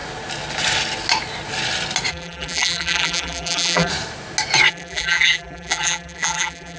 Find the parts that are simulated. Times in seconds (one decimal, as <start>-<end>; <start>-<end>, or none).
2.1-3.9; 4.7-6.8